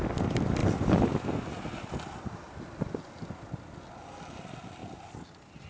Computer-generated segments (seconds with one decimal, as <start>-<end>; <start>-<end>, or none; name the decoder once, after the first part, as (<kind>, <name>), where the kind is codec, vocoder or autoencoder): none